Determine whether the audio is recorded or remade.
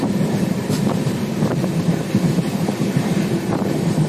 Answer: remade